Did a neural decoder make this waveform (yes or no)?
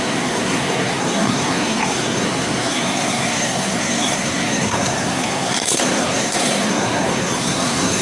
yes